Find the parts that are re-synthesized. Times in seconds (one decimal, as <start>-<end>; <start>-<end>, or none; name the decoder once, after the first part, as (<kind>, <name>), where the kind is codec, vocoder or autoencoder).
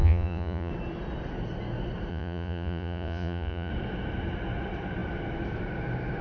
0.0-0.7 (vocoder, Vocos); 2.1-3.7